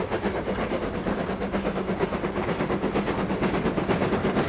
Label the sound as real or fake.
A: real